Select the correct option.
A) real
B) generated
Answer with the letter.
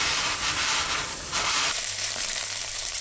B